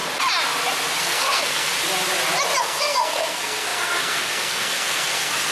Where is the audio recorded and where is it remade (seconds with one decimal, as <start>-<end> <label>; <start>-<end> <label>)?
0.0-1.0 recorded; 1.0-1.7 remade; 1.7-2.6 recorded; 2.6-5.5 remade

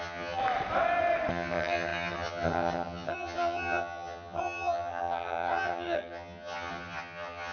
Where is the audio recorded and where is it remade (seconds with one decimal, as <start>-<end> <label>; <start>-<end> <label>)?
0.0-0.4 remade; 0.4-1.3 recorded; 1.3-7.5 remade

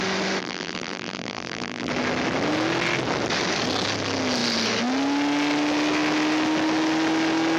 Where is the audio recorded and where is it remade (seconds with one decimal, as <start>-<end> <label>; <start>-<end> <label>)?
0.0-0.4 recorded; 0.4-1.9 remade; 1.9-7.6 recorded

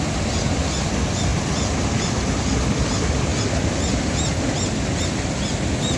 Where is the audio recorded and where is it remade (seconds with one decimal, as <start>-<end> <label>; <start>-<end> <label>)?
0.0-6.0 recorded

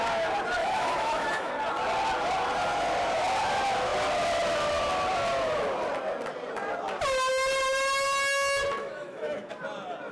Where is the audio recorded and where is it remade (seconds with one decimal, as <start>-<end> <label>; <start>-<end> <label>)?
0.0-0.6 recorded; 0.6-1.5 remade; 1.5-8.8 recorded; 8.8-9.5 remade; 9.5-10.1 recorded